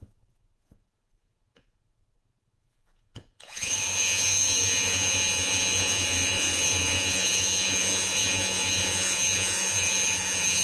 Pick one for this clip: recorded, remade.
remade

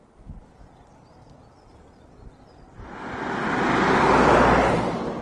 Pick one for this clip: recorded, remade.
recorded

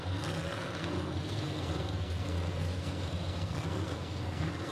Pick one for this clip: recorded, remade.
remade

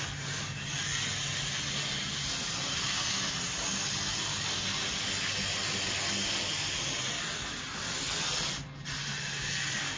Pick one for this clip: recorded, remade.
recorded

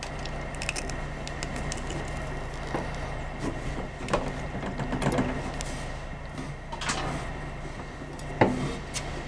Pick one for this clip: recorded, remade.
recorded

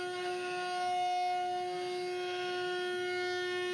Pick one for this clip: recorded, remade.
recorded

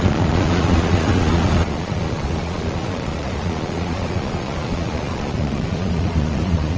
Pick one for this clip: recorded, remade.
remade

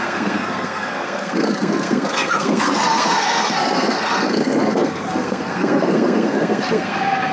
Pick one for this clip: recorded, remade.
remade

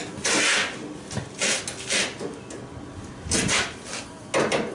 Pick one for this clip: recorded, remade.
recorded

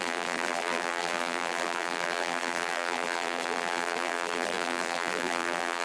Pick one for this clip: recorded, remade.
remade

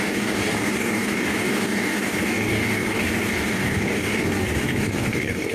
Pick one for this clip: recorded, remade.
remade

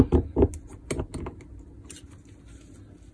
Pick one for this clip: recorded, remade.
recorded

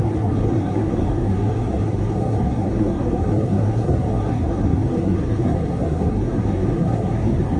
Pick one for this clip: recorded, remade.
remade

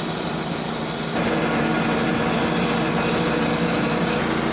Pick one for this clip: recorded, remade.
recorded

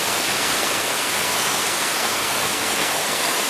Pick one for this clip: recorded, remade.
remade